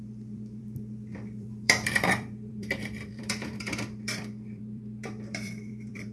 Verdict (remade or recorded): remade